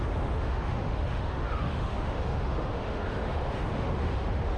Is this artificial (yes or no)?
yes